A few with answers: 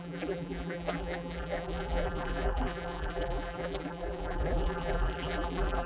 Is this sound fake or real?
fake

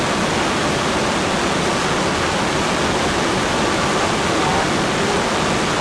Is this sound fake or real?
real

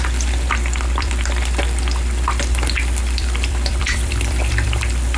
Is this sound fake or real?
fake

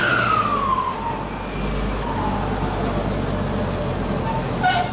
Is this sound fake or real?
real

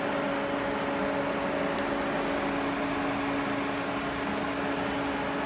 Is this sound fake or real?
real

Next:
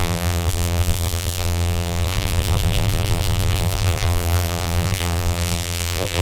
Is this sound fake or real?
fake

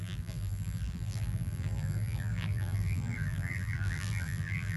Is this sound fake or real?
fake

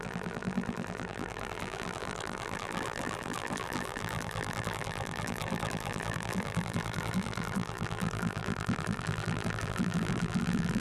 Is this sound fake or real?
fake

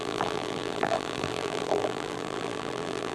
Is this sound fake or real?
fake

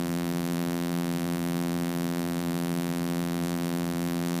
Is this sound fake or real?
fake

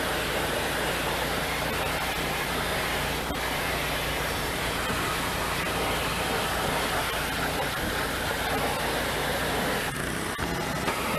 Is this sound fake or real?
real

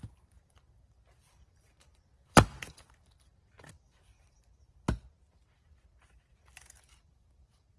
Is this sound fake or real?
fake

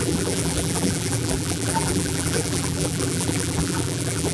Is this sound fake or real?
fake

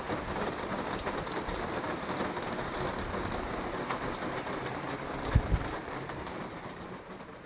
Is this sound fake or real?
fake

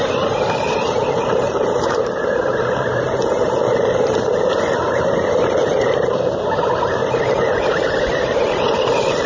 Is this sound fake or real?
fake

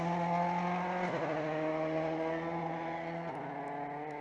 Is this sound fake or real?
real